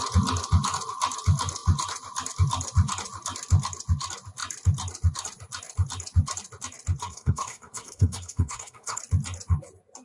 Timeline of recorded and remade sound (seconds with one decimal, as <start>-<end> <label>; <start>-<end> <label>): 0.0-7.0 recorded; 7.0-9.0 remade; 9.0-10.0 recorded